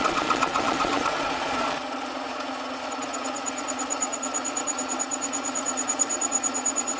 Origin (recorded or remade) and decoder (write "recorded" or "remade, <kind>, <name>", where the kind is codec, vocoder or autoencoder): remade, vocoder, Vocos